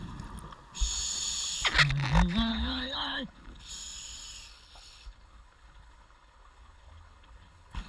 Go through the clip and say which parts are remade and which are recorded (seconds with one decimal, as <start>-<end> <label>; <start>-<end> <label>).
0.0-2.5 recorded; 2.5-3.7 remade; 3.7-4.5 recorded; 4.5-7.9 remade